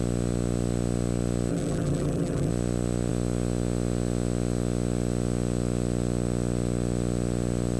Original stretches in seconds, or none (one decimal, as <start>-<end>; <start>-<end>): 0.0-1.5; 2.5-7.8